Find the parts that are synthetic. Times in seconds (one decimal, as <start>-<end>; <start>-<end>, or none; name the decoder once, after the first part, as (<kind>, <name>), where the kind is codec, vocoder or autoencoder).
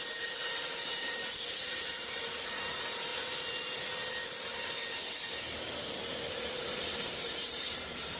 0.0-3.1 (vocoder, BigVGAN v2); 6.3-8.2